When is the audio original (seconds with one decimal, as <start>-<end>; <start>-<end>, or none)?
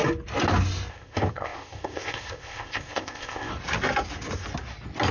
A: 0.0-0.9; 3.5-5.1